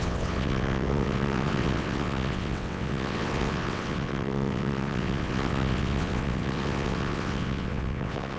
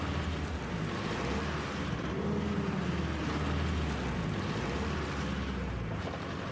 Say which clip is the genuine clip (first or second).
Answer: second